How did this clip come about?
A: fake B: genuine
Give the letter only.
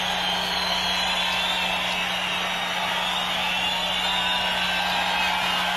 B